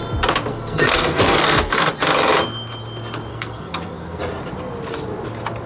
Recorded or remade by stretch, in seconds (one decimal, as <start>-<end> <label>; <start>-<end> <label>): 0.0-0.5 recorded; 0.5-1.9 remade; 1.9-3.3 recorded; 3.3-4.2 remade; 4.2-5.7 recorded